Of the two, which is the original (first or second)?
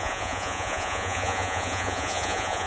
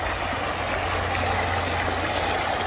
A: second